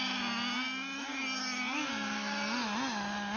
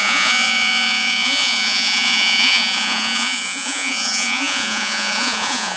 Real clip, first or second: first